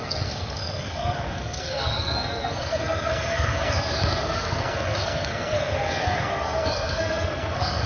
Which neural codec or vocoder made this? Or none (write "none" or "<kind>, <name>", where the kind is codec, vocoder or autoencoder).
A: codec, SNAC